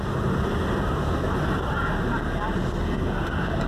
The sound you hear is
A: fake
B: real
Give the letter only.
B